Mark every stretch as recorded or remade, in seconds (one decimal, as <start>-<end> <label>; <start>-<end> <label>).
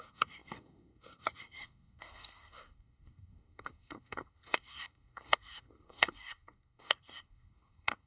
0.0-8.1 remade